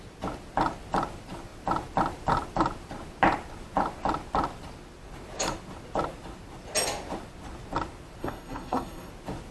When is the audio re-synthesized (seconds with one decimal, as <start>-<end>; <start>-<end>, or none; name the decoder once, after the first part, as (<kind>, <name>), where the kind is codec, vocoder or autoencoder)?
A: 8.2-9.1 (codec, SNAC)